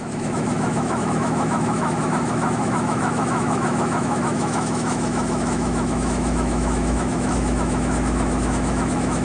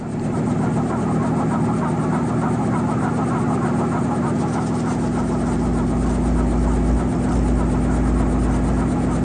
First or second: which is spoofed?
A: first